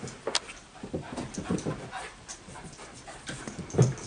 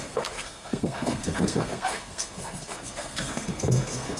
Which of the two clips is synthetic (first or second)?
second